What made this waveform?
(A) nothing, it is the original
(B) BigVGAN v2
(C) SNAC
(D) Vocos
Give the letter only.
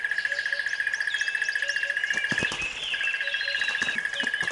A